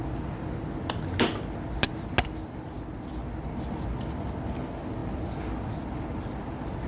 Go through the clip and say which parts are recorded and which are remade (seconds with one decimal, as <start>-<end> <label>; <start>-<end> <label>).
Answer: 0.0-6.9 recorded